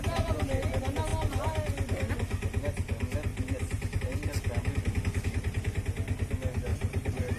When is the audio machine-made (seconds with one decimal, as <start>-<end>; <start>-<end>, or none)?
3.3-4.0; 6.7-7.4